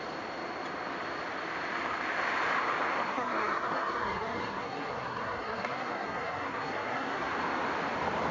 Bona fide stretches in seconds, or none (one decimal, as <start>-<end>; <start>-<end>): 0.0-3.1; 7.3-8.3